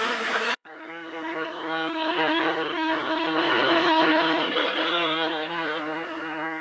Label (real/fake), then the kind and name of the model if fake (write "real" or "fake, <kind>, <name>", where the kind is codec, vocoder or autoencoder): fake, codec, SNAC